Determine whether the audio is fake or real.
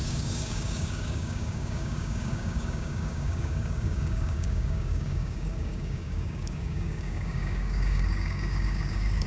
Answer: fake